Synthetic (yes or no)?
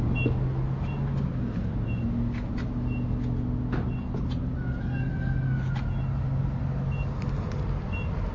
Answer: no